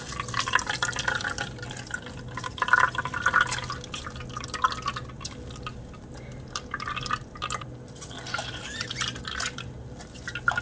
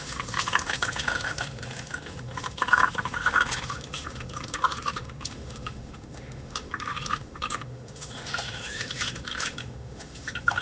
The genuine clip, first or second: first